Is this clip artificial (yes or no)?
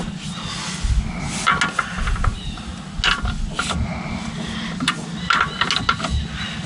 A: no